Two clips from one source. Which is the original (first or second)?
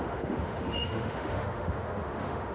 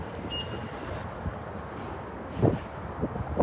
second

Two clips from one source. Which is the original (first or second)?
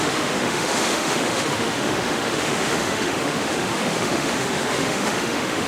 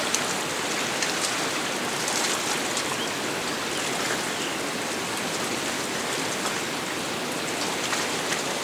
second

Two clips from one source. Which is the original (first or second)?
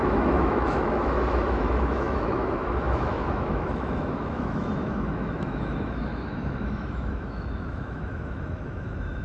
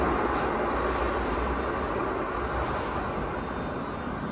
second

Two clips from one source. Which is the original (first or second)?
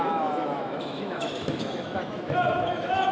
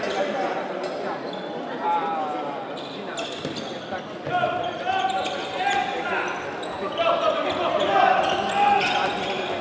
second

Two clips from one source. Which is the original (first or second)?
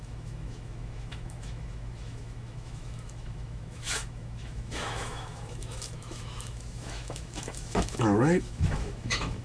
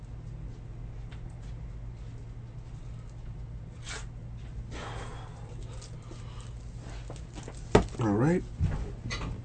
second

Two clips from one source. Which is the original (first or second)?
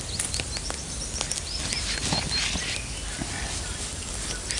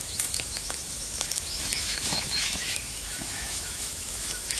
first